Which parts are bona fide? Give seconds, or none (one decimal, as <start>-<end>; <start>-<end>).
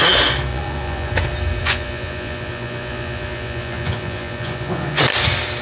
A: 0.0-0.5; 1.1-1.6; 5.0-5.6